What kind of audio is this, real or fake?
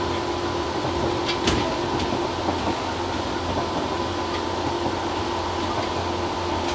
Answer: real